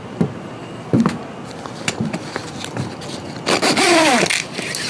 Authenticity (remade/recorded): recorded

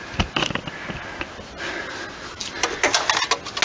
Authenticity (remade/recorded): recorded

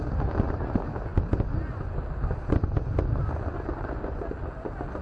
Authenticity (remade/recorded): recorded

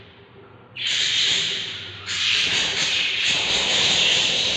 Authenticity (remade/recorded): remade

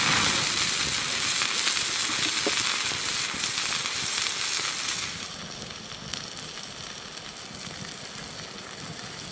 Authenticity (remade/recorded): recorded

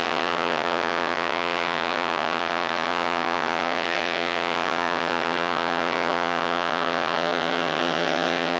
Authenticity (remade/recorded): remade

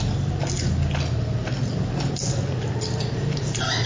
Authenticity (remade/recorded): recorded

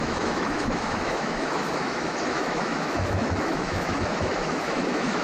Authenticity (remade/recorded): remade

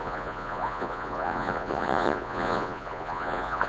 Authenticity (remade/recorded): remade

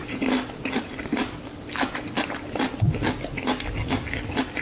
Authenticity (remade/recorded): recorded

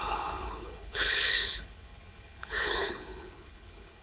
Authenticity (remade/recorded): remade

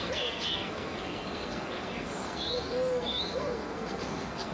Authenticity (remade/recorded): remade